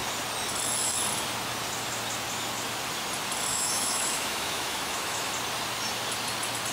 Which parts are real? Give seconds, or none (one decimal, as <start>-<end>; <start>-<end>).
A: 0.0-3.5; 5.3-6.7